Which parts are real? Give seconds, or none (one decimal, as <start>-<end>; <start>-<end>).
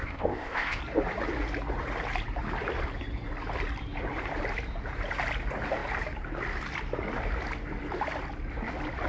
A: 0.8-9.1